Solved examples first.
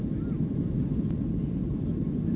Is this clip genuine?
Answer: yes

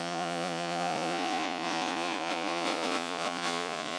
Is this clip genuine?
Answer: no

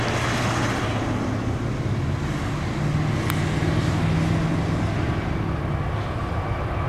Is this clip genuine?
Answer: yes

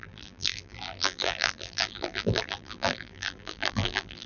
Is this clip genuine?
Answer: no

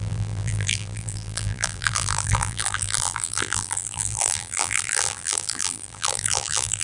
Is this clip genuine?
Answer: no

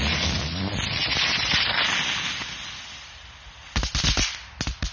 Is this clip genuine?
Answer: yes